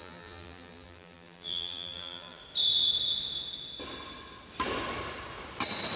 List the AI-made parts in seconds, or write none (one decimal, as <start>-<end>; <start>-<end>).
0.0-2.4